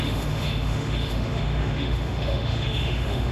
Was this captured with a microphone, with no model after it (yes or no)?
no